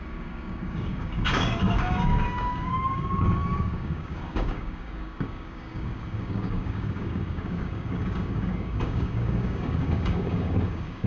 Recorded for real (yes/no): no